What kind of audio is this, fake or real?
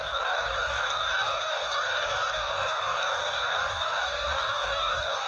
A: fake